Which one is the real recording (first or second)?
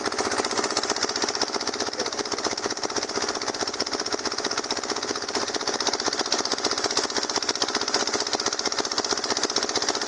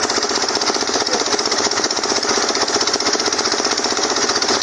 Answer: first